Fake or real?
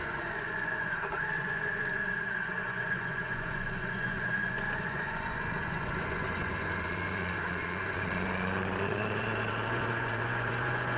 fake